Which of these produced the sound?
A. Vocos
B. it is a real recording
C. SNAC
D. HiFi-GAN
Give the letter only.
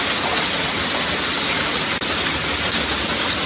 B